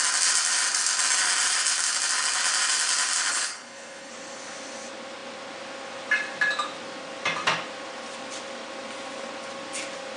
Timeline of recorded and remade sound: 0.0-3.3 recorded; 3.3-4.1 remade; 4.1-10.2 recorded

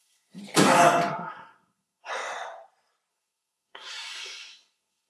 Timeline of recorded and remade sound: 0.0-0.4 remade; 0.4-1.1 recorded; 1.1-2.1 remade; 2.1-3.1 recorded; 3.1-5.1 remade